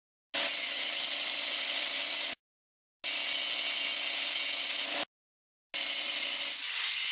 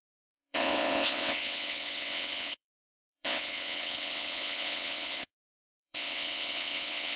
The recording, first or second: first